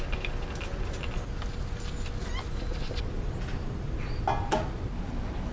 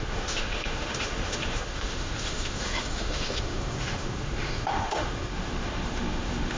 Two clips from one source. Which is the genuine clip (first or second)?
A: first